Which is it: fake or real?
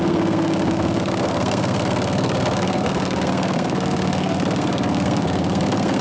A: fake